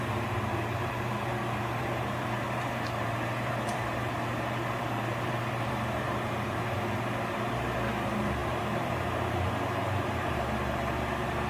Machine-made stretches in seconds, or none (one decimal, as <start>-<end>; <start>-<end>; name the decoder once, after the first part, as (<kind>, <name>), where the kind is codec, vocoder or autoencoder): 0.0-11.5 (vocoder, BigVGAN v2)